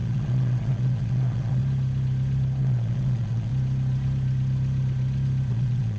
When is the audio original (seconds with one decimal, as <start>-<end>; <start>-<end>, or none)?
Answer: 1.6-2.6; 3.5-5.5